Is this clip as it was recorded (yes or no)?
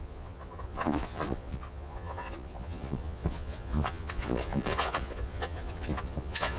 no